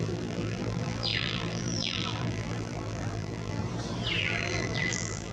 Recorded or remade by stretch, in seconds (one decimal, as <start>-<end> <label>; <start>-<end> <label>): 0.0-3.6 remade; 3.6-4.2 recorded; 4.2-5.3 remade